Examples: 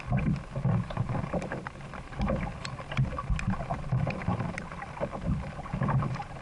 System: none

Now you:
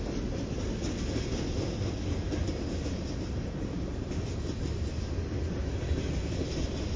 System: none